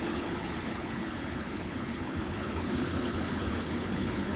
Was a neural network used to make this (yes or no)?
yes